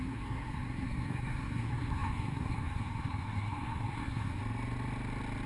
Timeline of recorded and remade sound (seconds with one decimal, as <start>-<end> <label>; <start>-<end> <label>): 0.0-4.4 remade; 4.4-5.5 recorded